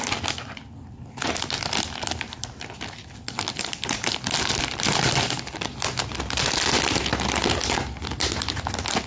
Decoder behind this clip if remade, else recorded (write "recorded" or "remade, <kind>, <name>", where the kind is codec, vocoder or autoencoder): recorded